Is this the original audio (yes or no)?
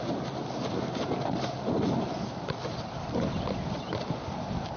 yes